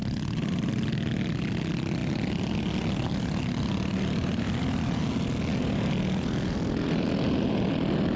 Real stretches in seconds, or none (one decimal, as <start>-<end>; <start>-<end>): 0.0-8.2